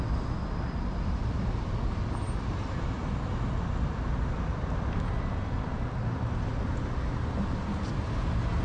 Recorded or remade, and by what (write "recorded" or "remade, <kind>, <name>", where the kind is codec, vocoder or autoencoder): recorded